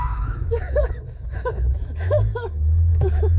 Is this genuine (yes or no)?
no